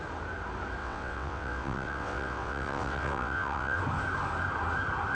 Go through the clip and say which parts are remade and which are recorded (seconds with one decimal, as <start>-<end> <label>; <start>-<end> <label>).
0.0-0.8 recorded; 0.8-3.8 remade; 3.8-5.1 recorded